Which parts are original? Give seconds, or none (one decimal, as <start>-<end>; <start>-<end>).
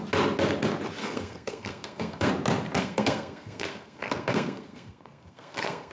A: 0.0-1.0; 2.3-2.8